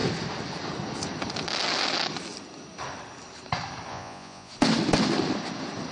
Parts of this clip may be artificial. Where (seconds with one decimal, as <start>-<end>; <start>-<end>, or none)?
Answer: 3.9-4.5